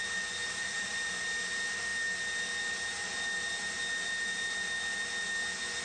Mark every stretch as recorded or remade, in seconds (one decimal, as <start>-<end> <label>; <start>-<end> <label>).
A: 0.0-0.4 recorded; 0.4-1.2 remade; 1.2-5.8 recorded